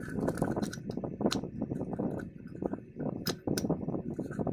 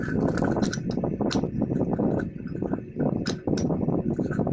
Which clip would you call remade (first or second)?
first